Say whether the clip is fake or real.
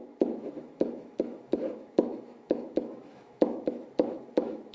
fake